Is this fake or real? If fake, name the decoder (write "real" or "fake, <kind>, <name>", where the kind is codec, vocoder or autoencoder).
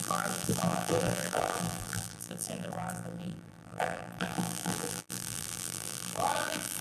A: fake, vocoder, BigVGAN v2